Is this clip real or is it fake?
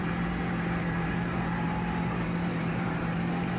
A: fake